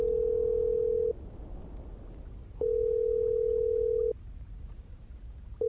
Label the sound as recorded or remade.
recorded